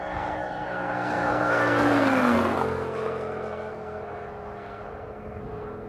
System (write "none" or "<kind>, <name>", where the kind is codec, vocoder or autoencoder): codec, SNAC